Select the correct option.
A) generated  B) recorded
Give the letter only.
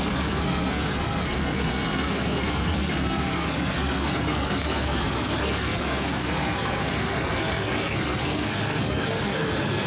A